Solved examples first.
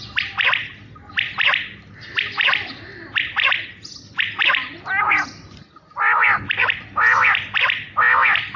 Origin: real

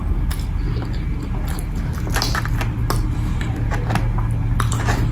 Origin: real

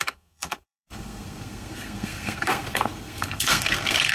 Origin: fake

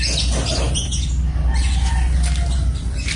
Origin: real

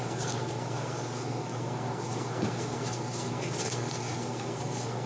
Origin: fake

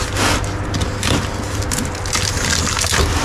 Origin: real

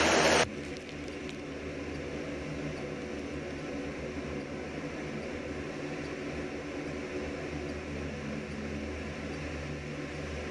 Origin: real